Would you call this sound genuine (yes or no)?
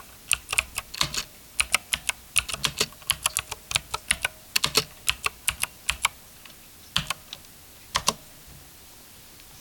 yes